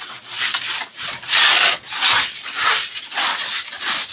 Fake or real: real